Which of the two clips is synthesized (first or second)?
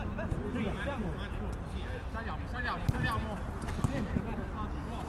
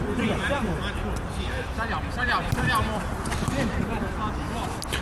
second